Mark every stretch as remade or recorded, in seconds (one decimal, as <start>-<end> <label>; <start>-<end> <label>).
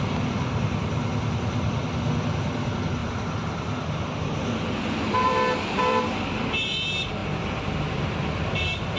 0.0-9.0 remade